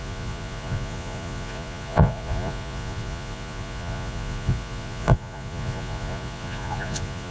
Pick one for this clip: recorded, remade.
remade